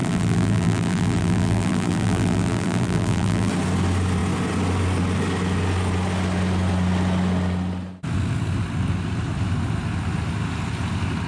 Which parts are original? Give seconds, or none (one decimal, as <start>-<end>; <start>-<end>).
3.5-11.3

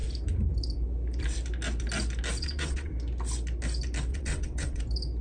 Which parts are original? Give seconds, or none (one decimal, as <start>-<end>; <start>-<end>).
0.0-2.4; 2.9-4.1; 4.8-5.2

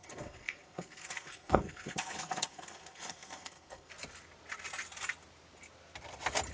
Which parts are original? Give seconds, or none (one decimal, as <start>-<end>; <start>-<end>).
3.9-6.5

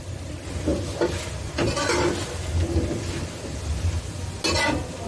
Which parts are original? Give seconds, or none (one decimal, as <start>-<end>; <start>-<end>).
0.0-5.1

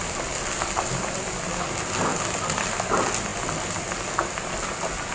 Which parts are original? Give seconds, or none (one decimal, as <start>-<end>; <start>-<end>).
0.0-5.1

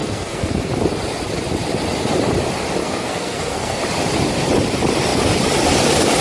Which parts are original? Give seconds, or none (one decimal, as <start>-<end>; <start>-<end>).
0.7-2.8; 3.8-6.2